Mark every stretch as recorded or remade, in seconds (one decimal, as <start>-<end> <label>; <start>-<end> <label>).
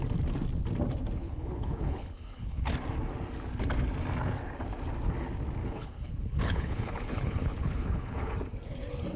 0.0-1.2 recorded; 1.2-2.7 remade; 2.7-5.6 recorded; 5.6-8.3 remade; 8.3-9.2 recorded